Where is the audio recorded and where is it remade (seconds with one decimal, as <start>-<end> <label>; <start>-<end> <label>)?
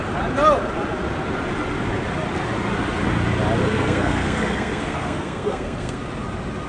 0.0-3.6 recorded; 3.6-6.0 remade; 6.0-6.7 recorded